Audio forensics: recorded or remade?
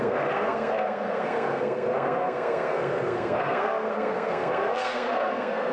remade